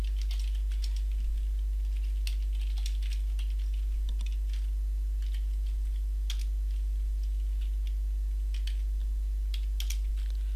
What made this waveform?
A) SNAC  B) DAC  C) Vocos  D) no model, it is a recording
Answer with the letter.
D